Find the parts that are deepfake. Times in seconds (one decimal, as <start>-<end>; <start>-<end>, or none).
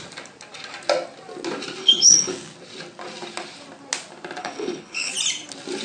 1.8-2.3; 4.4-5.1